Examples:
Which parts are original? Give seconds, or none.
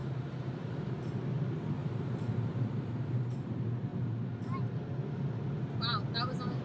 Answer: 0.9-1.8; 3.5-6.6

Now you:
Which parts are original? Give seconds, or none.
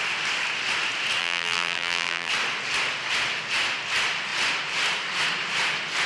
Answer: 0.0-1.2; 2.3-6.1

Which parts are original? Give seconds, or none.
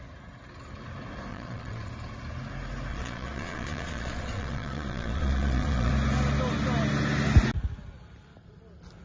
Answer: 0.0-1.3; 1.9-2.9; 5.9-9.0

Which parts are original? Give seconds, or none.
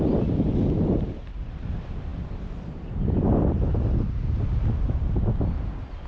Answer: 0.0-6.1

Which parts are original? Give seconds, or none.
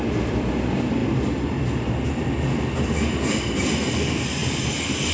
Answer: 0.0-5.1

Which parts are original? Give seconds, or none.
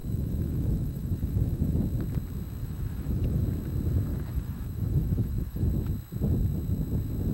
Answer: 1.8-2.6; 3.4-4.1; 5.7-7.3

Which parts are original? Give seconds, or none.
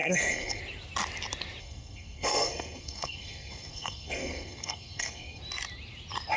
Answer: 0.6-1.6; 5.4-6.4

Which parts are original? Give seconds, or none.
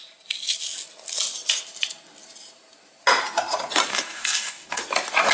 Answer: 0.0-3.9; 4.8-5.3